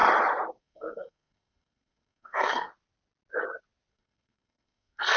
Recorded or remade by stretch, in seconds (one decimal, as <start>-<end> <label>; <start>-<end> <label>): 0.0-0.6 recorded; 0.6-2.7 remade; 2.7-3.9 recorded; 3.9-5.2 remade